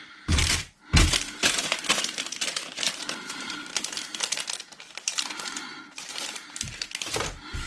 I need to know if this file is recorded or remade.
remade